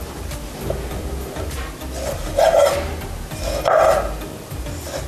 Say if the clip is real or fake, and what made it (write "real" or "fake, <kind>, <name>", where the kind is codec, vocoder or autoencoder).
real